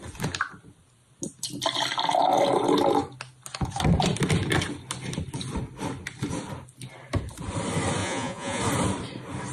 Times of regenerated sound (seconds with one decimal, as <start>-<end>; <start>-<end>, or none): 8.0-8.6